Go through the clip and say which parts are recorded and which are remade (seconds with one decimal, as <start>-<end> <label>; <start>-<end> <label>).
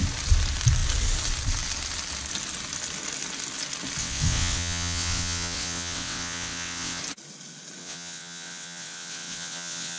0.0-4.0 recorded; 4.0-7.0 remade; 7.0-7.8 recorded; 7.8-10.0 remade